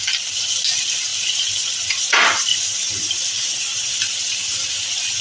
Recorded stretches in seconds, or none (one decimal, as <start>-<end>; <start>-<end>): 0.0-5.2